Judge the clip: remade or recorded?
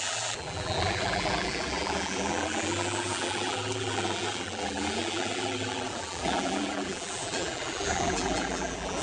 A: remade